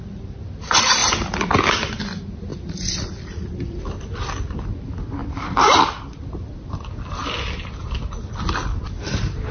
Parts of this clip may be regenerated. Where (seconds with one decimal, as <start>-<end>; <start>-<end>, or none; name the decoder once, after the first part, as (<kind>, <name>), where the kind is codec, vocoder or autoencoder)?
0.0-1.0 (vocoder, BigVGAN v2); 2.0-7.2; 8.9-9.5